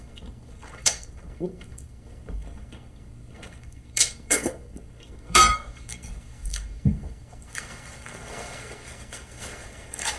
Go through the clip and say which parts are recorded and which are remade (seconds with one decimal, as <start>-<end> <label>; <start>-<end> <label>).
0.0-10.2 remade